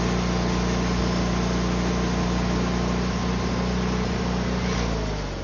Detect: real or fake real